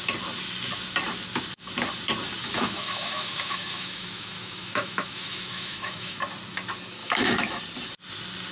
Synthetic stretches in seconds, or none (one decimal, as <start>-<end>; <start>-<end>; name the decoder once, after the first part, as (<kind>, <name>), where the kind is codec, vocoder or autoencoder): 2.4-6.2 (autoencoder, DAC-VAE); 7.0-7.6